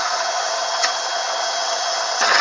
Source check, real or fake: fake